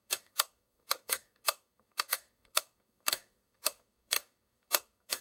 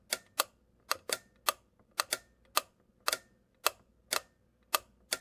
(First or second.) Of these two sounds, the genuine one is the second